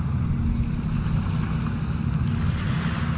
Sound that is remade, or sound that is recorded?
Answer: recorded